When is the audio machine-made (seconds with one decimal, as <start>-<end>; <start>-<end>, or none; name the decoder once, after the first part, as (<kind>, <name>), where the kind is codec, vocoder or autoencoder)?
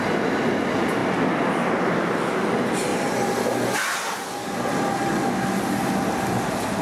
none